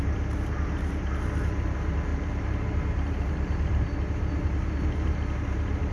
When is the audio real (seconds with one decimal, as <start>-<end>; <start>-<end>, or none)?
0.0-2.1; 3.8-5.9